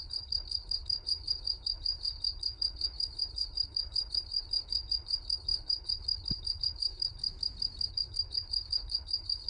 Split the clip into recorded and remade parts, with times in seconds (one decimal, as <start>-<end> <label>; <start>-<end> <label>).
0.0-7.2 remade; 7.2-7.9 recorded; 7.9-9.5 remade